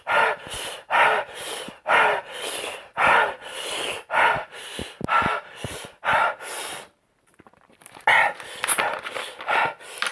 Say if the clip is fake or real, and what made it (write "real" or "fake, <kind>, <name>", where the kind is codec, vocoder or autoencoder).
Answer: real